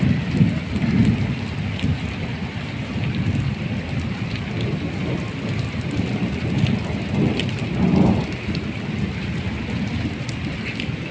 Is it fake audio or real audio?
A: real